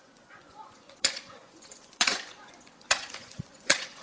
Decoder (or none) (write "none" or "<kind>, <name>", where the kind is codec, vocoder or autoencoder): vocoder, Vocos